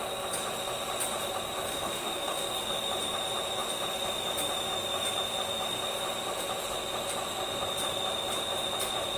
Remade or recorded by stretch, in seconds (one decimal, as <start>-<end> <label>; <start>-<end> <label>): 0.0-1.7 recorded; 1.7-2.5 remade; 2.5-9.2 recorded